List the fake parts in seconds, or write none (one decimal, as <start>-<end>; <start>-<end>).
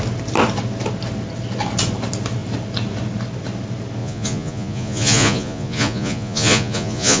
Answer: 4.0-7.2